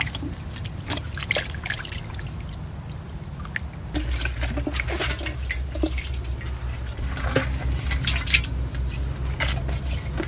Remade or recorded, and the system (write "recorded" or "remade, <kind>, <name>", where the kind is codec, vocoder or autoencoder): recorded